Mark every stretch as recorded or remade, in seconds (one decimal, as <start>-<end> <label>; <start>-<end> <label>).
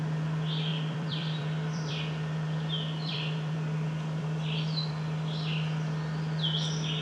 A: 0.0-0.7 recorded; 0.7-4.9 remade; 4.9-7.0 recorded